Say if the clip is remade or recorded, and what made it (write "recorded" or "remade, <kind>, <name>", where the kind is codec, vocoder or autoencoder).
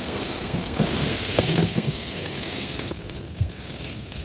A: remade, codec, SNAC